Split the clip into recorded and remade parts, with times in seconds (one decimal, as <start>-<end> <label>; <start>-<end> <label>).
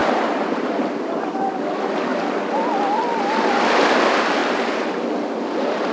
0.0-1.3 remade; 1.3-4.4 recorded; 4.4-4.9 remade; 4.9-5.9 recorded